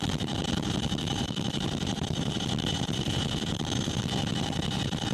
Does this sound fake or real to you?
fake